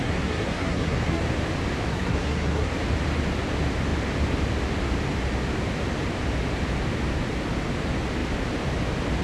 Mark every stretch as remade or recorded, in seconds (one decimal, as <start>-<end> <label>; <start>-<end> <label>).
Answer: 0.0-1.2 remade; 1.2-1.9 recorded; 1.9-2.7 remade; 2.7-9.2 recorded